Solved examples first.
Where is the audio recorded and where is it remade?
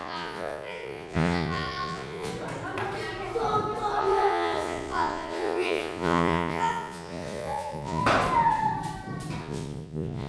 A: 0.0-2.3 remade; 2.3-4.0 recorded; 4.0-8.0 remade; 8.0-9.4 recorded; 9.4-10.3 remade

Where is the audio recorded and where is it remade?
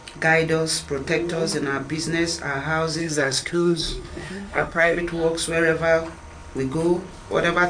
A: 0.0-3.0 recorded; 3.0-5.0 remade; 5.0-7.7 recorded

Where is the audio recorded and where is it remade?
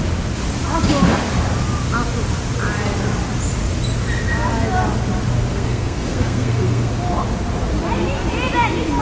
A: 0.0-5.5 recorded; 5.5-6.9 remade; 6.9-9.0 recorded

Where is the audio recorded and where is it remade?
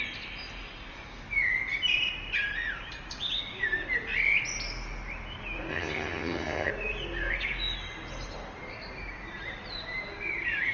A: 0.0-5.7 recorded; 5.7-6.7 remade; 6.7-10.7 recorded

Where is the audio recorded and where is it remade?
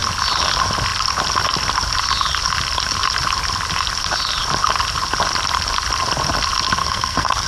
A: 0.0-6.8 recorded; 6.8-7.5 remade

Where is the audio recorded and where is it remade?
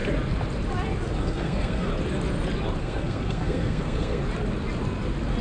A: 0.0-1.2 recorded; 1.2-1.9 remade; 1.9-2.8 recorded; 2.8-4.2 remade; 4.2-5.4 recorded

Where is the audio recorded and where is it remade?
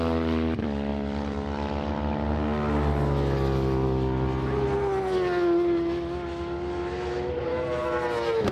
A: 0.0-8.5 recorded